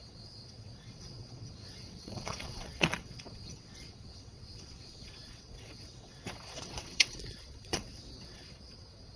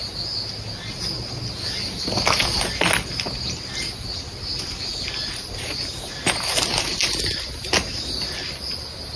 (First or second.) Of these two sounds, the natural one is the second